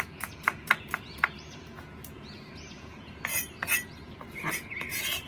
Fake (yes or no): yes